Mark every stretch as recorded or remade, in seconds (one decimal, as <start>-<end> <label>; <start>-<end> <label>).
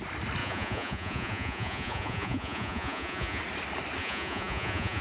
0.0-0.4 recorded; 0.4-3.4 remade; 3.4-4.0 recorded; 4.0-5.0 remade